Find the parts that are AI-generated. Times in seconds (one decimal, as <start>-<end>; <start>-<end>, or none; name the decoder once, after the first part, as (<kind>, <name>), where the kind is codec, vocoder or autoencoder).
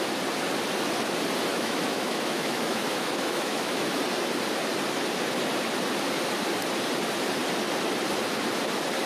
1.5-4.0 (autoencoder, DAC-VAE)